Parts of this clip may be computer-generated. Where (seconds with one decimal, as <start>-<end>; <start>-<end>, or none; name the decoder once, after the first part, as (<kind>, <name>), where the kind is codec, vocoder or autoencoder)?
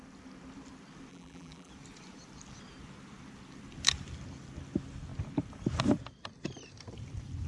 1.1-1.7 (vocoder, BigVGAN v2)